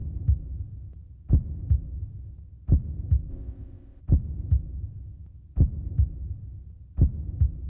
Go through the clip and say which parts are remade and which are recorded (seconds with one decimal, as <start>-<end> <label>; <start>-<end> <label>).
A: 0.0-3.3 recorded; 3.3-4.0 remade; 4.0-7.7 recorded